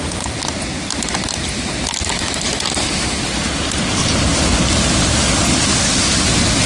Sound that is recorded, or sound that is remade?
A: recorded